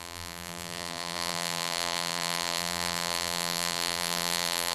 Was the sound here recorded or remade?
remade